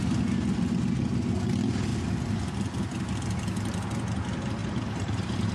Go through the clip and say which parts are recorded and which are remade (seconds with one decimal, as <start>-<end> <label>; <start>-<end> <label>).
0.0-4.6 recorded; 4.6-5.5 remade